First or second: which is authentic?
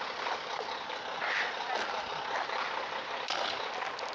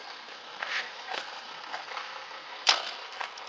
first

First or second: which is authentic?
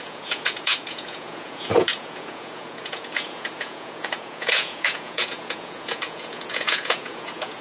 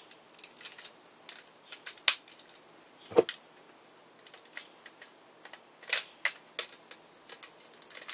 second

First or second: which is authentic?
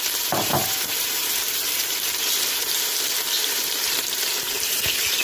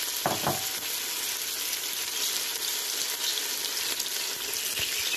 second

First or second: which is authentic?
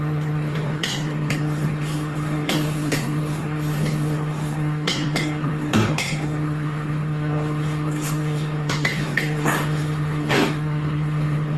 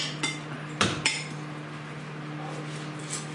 second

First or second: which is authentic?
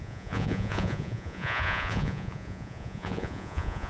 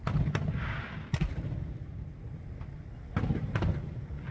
second